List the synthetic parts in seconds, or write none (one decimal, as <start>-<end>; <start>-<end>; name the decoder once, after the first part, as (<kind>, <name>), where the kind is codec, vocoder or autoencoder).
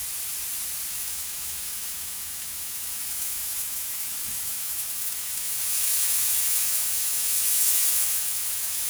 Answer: 0.9-8.9 (autoencoder, DAC-VAE)